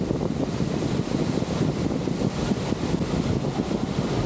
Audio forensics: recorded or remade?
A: recorded